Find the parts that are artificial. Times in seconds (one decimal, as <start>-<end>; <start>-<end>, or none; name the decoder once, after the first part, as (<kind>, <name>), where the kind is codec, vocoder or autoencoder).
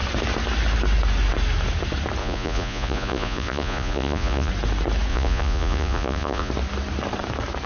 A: 2.2-4.5 (vocoder, Vocos); 5.1-6.5